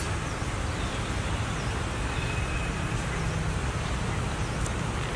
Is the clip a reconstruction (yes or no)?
no